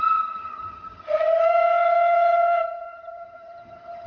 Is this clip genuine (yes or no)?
no